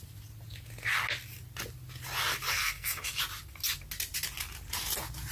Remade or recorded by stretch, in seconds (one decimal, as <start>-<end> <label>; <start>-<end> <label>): 0.0-2.5 recorded; 2.5-3.2 remade; 3.2-5.3 recorded